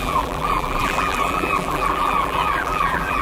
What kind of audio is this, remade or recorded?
remade